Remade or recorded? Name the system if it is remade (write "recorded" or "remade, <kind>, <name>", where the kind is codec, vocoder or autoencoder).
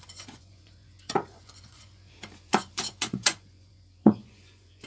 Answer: remade, vocoder, Vocos